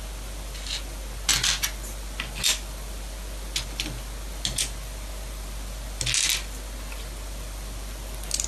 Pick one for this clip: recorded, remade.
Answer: recorded